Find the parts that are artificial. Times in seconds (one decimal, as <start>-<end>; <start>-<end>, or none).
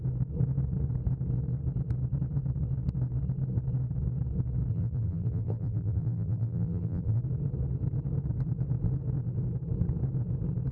4.7-7.2